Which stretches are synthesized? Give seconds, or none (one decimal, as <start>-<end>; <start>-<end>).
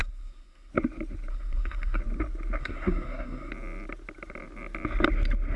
0.0-0.7; 1.3-2.0; 2.6-3.5